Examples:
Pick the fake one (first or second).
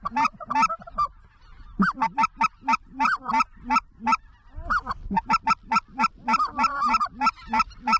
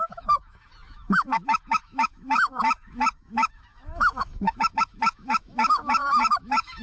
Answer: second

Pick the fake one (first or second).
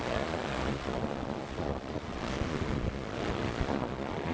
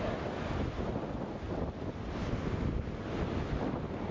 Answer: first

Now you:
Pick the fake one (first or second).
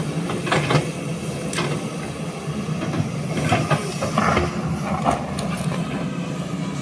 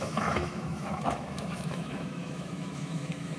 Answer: second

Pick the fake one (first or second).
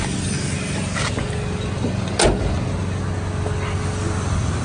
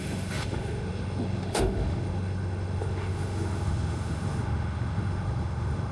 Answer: second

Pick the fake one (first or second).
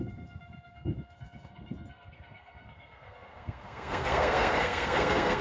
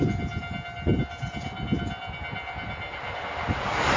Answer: first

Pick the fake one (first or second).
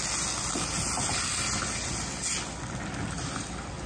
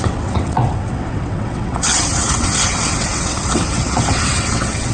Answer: second